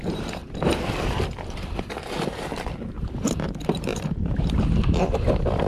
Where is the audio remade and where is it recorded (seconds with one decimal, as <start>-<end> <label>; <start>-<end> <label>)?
0.0-5.7 remade